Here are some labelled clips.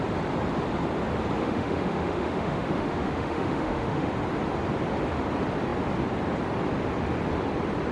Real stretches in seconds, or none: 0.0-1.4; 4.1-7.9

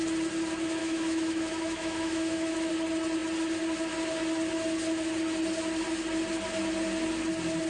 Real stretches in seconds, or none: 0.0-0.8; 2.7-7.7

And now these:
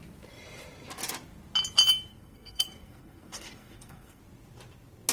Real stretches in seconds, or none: 0.0-2.1; 4.2-5.1

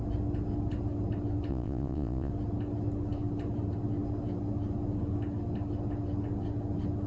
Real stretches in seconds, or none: 0.0-1.5; 2.3-7.1

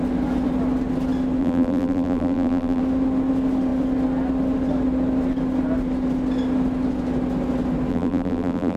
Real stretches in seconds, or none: 0.0-1.4; 2.8-7.9

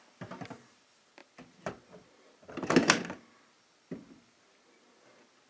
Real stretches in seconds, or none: 0.0-5.5